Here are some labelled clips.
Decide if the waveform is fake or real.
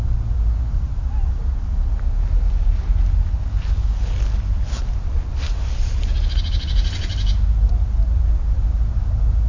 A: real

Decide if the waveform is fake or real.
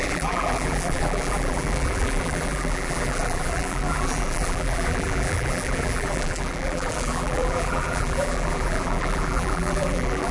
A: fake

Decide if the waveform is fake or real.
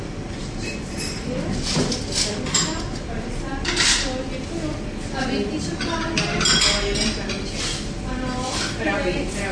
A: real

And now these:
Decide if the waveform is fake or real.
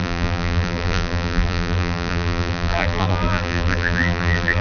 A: fake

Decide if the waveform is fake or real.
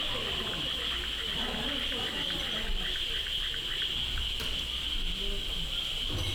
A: real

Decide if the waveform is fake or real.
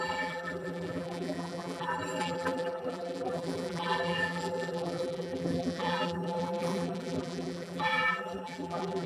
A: fake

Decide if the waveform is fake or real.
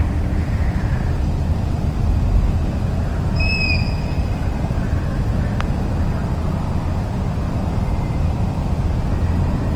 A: real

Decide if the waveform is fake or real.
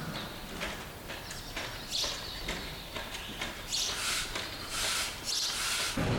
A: real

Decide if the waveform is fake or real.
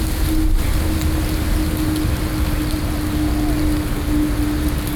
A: real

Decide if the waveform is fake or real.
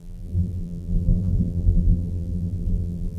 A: fake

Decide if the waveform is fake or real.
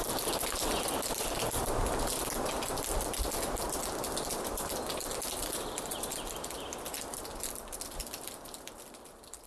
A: real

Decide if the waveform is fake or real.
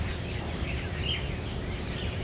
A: fake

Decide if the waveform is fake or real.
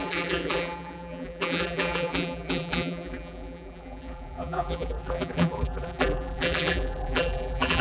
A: fake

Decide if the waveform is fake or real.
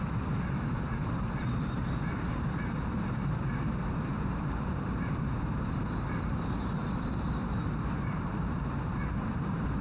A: fake